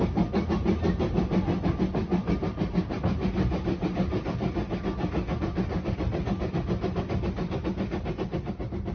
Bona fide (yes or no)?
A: yes